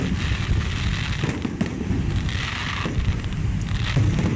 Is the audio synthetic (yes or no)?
no